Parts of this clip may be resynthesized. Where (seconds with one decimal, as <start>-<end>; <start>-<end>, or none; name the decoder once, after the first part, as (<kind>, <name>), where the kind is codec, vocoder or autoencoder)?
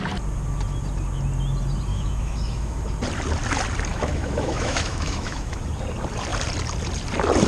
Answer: 1.9-2.8 (autoencoder, DAC-VAE); 3.9-5.6